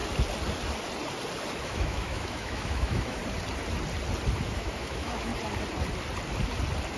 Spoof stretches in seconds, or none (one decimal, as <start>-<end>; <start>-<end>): 1.5-3.2; 4.5-5.3